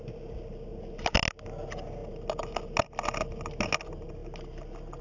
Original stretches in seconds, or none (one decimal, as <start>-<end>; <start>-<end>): 0.0-5.0